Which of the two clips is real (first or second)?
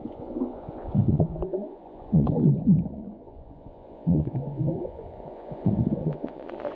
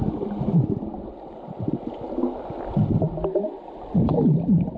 second